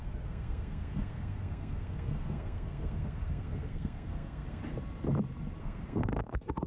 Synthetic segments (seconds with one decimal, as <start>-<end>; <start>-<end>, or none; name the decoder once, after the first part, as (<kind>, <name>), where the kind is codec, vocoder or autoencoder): 0.0-4.6 (codec, SNAC); 5.6-6.7